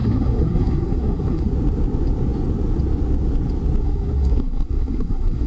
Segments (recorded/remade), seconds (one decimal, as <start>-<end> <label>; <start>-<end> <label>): 0.0-1.5 remade; 1.5-3.8 recorded; 3.8-5.5 remade